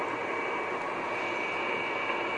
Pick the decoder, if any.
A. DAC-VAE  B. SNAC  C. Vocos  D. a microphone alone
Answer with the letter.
D